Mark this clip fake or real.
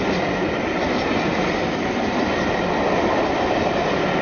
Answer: real